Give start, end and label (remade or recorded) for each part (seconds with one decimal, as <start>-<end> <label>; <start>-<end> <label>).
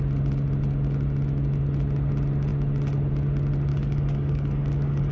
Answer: 0.0-3.7 recorded; 3.7-5.1 remade